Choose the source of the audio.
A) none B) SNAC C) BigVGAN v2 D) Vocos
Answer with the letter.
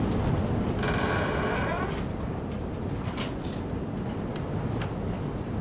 A